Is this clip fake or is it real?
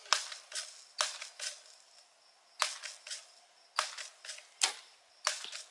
real